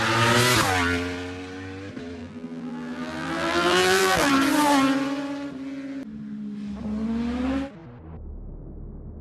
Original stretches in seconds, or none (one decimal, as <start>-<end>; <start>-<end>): 0.0-2.2; 4.3-9.2